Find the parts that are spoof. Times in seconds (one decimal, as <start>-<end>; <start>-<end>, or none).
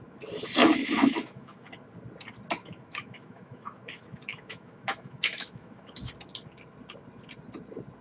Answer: 0.6-1.7; 2.6-6.1